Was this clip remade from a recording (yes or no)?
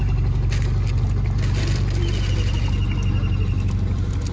no